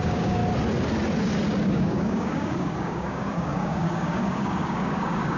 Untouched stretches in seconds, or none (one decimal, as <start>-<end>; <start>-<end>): 0.4-1.6